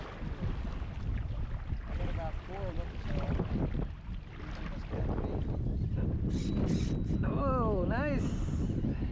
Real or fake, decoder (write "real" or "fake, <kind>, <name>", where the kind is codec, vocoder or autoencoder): real